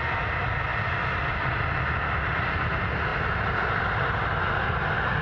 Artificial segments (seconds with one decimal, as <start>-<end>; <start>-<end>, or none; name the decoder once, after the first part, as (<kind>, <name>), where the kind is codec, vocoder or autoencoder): none